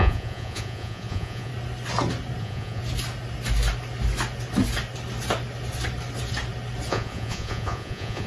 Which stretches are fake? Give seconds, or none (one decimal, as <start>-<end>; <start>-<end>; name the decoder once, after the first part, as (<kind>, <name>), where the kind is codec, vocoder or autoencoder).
0.0-1.5 (vocoder, Vocos); 2.4-2.8; 6.9-8.3